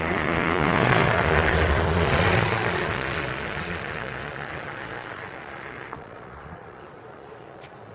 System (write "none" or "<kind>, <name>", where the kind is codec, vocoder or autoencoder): vocoder, Vocos